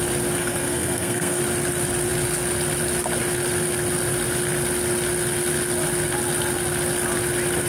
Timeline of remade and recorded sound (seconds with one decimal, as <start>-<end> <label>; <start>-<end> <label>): 0.0-0.4 recorded; 0.4-1.4 remade; 1.4-7.7 recorded